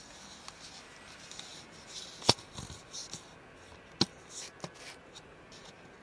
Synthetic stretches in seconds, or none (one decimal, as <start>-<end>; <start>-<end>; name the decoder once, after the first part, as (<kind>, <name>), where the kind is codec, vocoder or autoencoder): 1.5-2.3 (vocoder, BigVGAN v2)